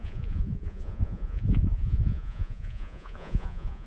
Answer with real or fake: fake